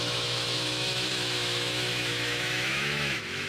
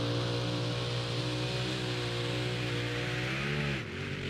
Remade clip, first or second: first